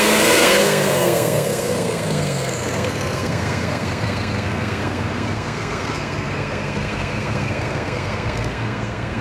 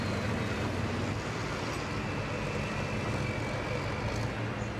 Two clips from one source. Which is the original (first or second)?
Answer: second